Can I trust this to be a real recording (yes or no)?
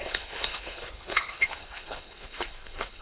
no